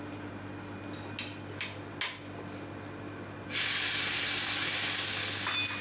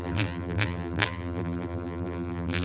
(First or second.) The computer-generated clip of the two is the second